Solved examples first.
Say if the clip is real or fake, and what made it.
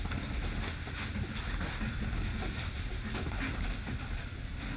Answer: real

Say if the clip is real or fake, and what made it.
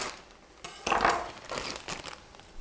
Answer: real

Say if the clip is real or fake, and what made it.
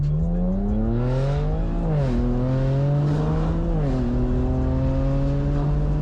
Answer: real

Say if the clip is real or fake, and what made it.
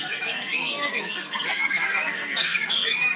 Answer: fake, codec, SNAC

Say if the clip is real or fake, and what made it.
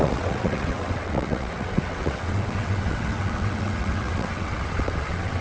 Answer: fake, vocoder, WaveNeXt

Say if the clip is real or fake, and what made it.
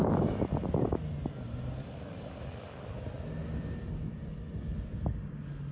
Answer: real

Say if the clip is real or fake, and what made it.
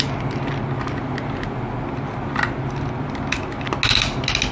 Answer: real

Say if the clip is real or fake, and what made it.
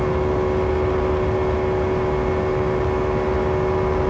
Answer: real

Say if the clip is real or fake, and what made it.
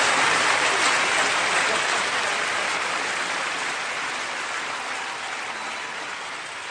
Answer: real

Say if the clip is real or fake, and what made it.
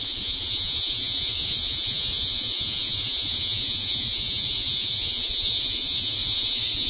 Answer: fake, vocoder, Vocos